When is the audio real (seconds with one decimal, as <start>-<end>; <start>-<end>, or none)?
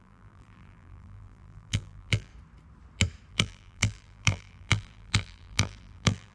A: 2.3-3.3